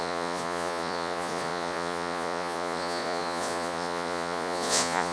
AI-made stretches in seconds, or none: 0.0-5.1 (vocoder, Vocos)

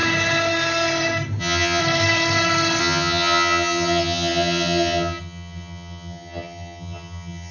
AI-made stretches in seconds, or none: 1.4-1.8 (vocoder, HiFi-GAN); 2.8-7.5

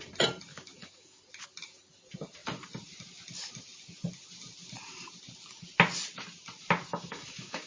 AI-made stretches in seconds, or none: 0.5-1.2 (autoencoder, DAC-VAE); 6.9-7.7

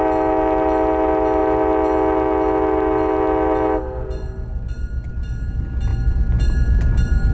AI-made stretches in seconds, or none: none

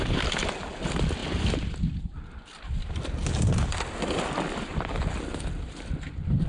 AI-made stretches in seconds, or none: none

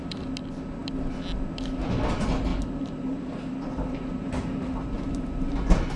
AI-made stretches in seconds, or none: 2.5-6.0 (vocoder, BigVGAN v2)

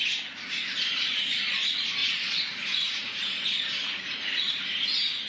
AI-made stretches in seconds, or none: 2.0-4.8 (vocoder, Vocos)